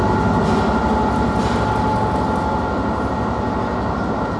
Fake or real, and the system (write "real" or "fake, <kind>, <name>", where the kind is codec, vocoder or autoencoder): real